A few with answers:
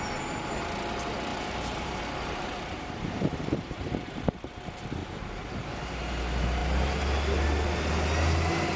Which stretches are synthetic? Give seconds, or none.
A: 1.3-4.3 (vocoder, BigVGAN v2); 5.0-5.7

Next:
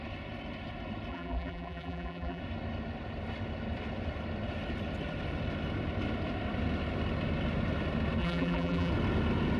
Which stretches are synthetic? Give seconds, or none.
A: 1.1-2.4 (vocoder, BigVGAN v2); 8.2-8.9

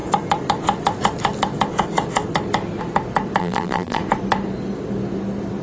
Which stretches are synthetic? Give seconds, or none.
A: 3.4-4.0 (vocoder, BigVGAN v2)

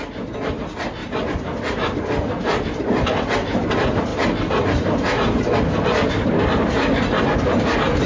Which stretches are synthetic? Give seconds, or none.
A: none